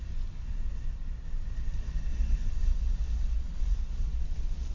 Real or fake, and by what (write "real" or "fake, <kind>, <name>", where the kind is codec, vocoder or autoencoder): real